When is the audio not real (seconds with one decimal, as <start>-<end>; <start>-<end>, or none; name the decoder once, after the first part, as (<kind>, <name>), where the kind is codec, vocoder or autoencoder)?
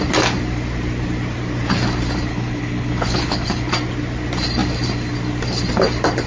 2.3-3.7 (codec, HILCodec)